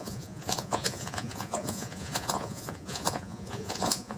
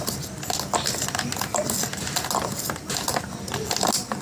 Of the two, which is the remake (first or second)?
first